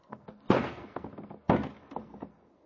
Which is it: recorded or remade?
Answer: remade